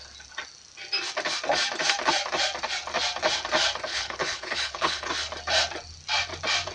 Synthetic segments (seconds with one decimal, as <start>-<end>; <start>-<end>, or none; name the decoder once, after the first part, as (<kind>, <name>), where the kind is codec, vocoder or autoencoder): 3.9-5.1 (codec, HILCodec)